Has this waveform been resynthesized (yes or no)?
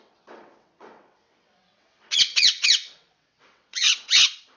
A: yes